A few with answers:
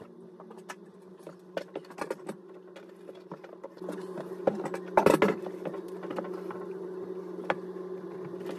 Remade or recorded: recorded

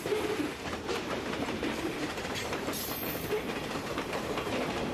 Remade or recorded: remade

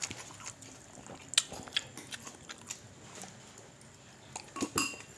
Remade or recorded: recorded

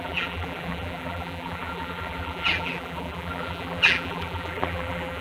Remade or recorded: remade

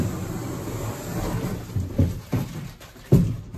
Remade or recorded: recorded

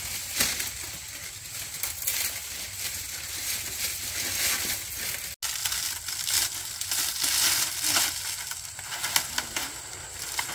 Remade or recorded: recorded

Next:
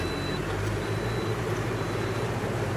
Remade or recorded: remade